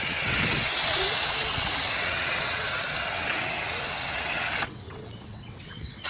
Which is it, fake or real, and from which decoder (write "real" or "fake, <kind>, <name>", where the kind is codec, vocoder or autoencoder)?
fake, vocoder, WaveNeXt